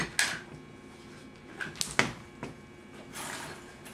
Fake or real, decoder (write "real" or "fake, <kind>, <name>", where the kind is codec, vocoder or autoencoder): real